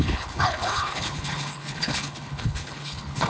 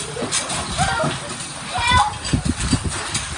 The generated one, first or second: first